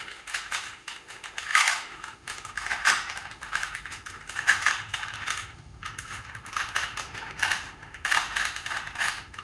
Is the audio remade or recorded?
remade